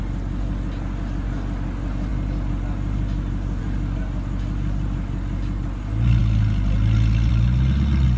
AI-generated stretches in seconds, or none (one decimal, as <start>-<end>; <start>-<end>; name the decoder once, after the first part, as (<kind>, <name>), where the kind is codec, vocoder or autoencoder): none